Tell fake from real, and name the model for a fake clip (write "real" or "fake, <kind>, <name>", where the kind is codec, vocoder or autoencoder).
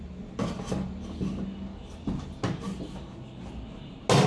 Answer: real